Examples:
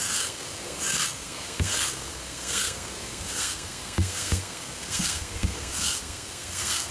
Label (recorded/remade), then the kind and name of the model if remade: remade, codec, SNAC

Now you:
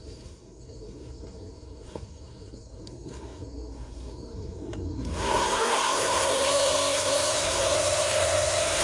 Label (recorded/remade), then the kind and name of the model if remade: remade, codec, SNAC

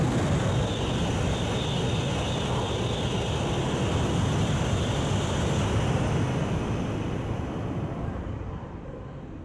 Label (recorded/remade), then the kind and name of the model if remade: recorded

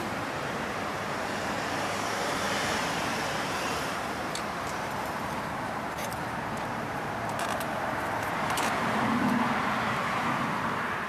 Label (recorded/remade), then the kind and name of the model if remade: remade, vocoder, BigVGAN v2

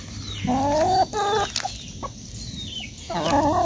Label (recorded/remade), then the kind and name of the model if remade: recorded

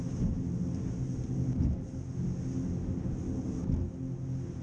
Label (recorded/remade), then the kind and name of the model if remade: recorded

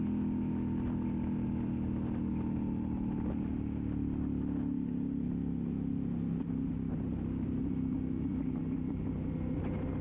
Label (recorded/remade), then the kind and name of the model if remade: recorded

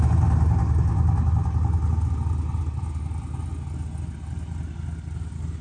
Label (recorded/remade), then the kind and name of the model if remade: recorded